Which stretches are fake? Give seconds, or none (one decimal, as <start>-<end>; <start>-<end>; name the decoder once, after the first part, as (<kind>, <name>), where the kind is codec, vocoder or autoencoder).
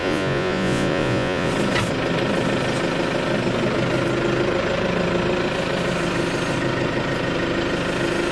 0.0-1.5 (vocoder, Vocos)